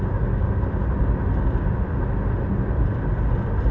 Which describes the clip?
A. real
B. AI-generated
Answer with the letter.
A